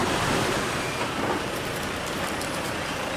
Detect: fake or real real